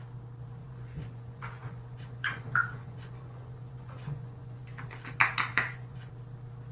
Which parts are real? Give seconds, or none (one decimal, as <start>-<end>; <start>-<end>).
0.0-0.6; 4.6-5.5; 6.1-6.7